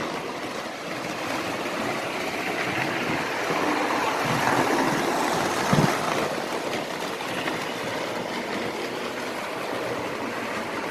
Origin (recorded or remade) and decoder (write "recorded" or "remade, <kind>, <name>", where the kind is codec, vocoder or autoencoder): recorded